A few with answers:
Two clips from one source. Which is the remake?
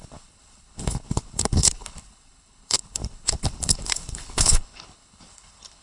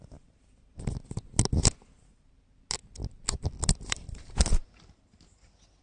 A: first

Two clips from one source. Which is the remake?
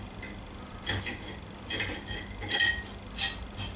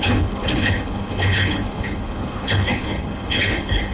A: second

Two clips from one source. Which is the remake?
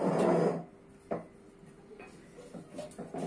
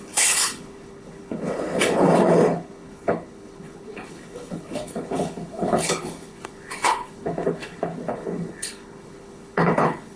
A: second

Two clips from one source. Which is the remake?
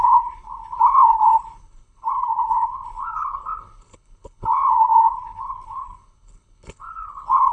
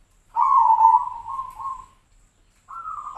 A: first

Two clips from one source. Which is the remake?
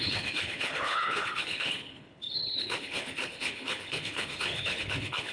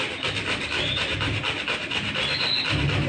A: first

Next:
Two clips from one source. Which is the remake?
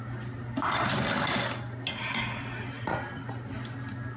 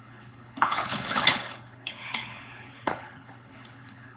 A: second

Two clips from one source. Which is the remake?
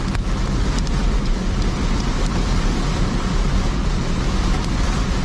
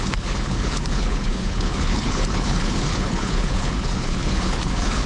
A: second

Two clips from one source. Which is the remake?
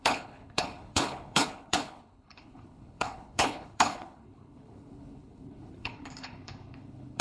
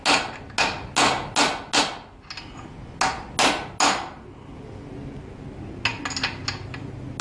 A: first